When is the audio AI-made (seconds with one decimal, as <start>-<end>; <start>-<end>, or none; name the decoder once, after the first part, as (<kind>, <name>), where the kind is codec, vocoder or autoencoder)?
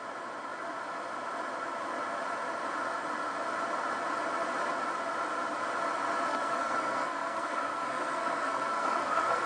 6.3-9.5 (codec, SNAC)